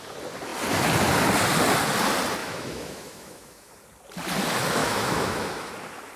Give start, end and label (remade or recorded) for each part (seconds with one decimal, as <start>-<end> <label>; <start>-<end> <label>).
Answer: 0.0-2.4 recorded; 2.4-3.7 remade; 3.7-4.8 recorded; 4.8-5.7 remade; 5.7-6.2 recorded